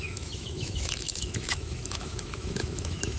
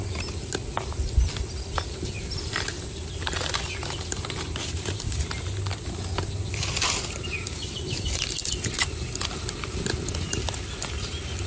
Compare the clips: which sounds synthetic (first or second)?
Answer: first